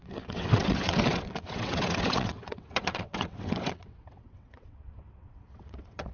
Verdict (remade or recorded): remade